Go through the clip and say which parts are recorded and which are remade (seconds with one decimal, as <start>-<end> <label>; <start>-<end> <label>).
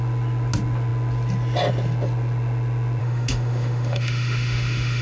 0.0-3.0 recorded; 3.0-5.0 remade